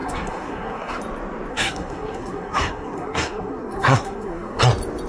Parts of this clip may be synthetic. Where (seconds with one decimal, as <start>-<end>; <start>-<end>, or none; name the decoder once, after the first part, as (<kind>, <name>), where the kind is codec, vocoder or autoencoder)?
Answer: 0.0-1.0 (codec, SNAC); 1.5-4.6